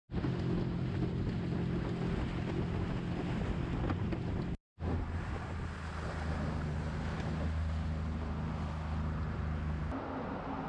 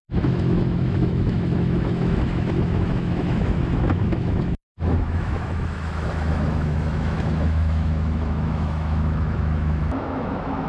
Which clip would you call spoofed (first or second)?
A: second